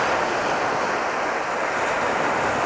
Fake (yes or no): no